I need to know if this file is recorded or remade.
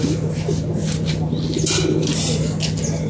recorded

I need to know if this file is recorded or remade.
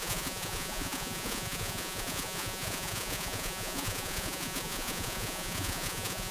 remade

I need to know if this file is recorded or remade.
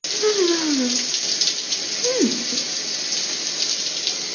recorded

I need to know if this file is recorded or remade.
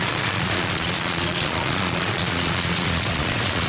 remade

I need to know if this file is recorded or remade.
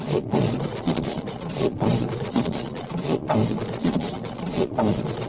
remade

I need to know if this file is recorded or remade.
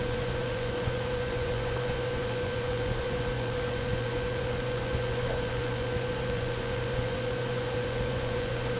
remade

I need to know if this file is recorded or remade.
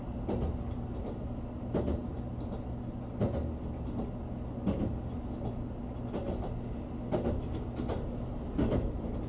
recorded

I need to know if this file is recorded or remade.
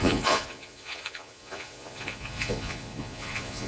remade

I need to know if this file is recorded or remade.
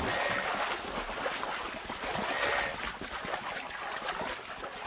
recorded